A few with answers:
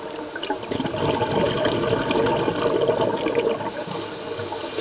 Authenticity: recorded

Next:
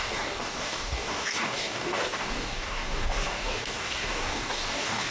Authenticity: remade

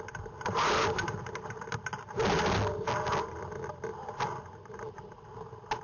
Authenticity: recorded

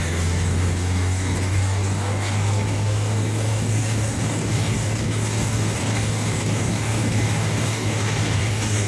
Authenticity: remade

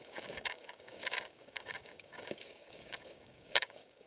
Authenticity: remade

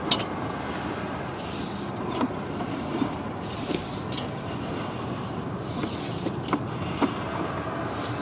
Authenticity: recorded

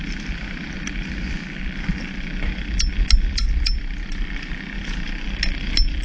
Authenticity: recorded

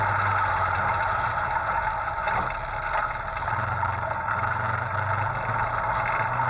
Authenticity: recorded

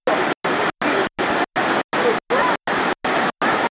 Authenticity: recorded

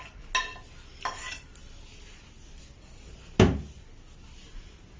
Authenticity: recorded